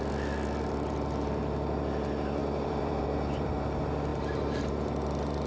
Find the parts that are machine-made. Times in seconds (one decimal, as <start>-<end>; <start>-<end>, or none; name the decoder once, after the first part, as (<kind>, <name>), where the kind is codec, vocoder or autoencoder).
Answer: 2.4-3.0 (vocoder, BigVGAN v2)